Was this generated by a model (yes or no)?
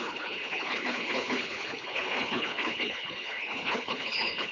yes